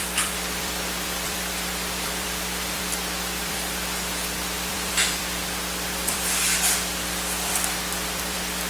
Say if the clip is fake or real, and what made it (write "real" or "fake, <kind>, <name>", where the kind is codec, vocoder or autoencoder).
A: fake, vocoder, BigVGAN v2